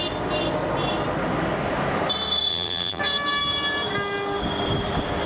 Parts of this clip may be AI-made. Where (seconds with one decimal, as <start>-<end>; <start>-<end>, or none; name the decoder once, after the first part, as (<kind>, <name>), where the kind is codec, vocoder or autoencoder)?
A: 2.5-3.0 (vocoder, BigVGAN v2)